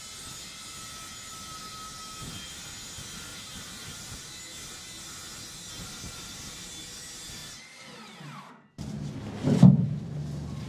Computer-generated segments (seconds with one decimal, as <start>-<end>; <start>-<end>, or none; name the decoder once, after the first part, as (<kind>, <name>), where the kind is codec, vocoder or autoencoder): 3.3-4.2 (vocoder, BigVGAN v2); 7.4-8.5